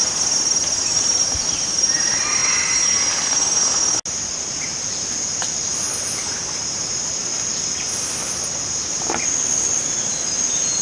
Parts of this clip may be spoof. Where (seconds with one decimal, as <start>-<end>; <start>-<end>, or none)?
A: 0.0-2.4; 6.2-7.3; 9.9-10.8